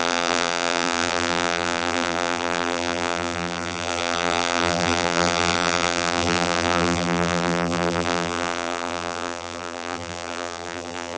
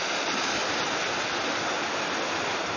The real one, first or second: second